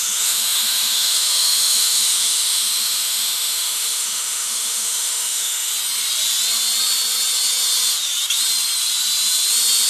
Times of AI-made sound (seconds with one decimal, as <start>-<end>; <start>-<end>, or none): 0.0-5.7

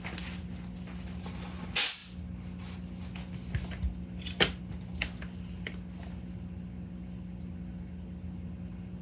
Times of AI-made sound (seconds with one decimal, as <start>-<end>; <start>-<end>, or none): none

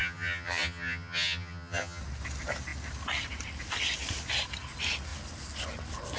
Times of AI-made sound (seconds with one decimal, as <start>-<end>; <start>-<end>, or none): 0.0-2.0

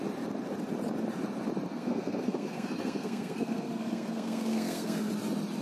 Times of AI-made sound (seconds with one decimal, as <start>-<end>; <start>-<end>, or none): 1.7-5.1

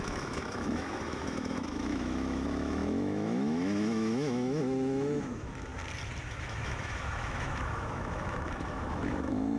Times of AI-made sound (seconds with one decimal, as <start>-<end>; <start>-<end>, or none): 0.0-5.7; 6.2-9.6

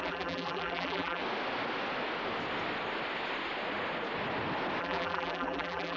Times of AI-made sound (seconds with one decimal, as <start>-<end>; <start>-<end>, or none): 0.0-1.2; 4.8-6.0

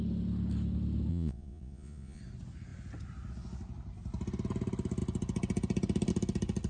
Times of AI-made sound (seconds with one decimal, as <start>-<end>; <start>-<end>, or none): 1.1-2.2